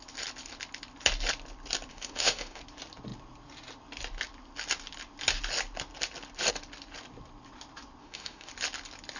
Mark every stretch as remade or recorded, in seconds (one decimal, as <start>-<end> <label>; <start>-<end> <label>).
0.0-1.9 recorded; 1.9-2.6 remade; 2.6-8.0 recorded; 8.0-8.5 remade; 8.5-9.2 recorded